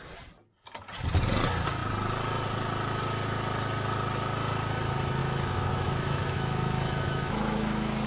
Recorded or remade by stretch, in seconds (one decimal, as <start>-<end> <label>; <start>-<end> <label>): 0.0-5.2 recorded; 5.2-8.1 remade